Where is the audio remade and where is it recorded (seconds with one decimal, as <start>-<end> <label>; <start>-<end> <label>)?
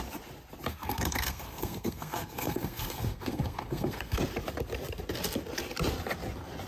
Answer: 0.0-0.7 recorded; 0.7-4.2 remade; 4.2-6.7 recorded